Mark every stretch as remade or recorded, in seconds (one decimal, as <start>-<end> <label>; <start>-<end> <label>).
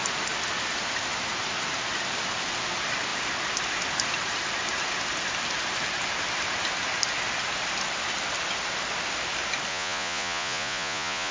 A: 0.0-9.7 recorded; 9.7-11.3 remade